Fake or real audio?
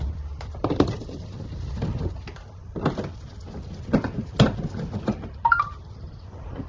real